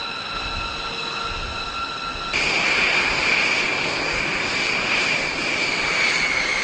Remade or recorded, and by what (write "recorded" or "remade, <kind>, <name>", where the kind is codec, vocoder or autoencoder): recorded